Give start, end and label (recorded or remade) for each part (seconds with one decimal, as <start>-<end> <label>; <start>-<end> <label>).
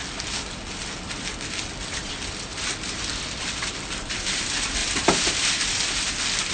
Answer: 0.0-1.9 recorded; 1.9-2.5 remade; 2.5-4.3 recorded; 4.3-4.8 remade; 4.8-6.5 recorded